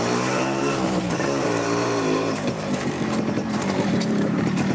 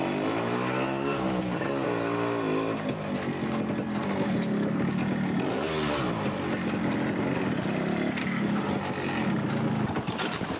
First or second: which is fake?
first